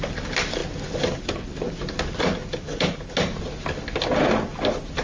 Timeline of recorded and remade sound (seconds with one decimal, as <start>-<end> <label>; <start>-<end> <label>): 0.0-5.0 recorded